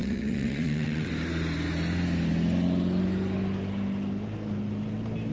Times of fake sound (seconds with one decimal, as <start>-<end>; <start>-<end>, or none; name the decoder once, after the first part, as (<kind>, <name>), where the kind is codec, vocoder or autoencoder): 0.0-1.1 (vocoder, WaveNeXt)